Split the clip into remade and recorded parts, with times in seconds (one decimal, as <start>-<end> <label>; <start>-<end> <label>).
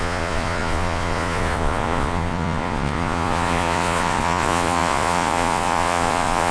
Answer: 0.0-6.5 remade